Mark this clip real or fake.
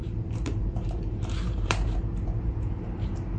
fake